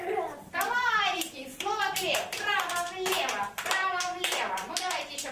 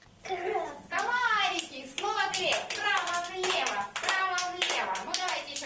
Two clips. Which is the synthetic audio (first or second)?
first